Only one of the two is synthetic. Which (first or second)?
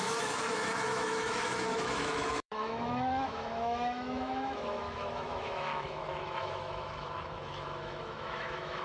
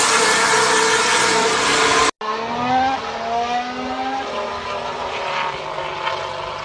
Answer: first